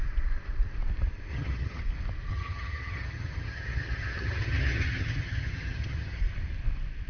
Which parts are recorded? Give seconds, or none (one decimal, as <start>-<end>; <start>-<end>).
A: 0.0-1.3; 1.8-2.3; 6.2-7.1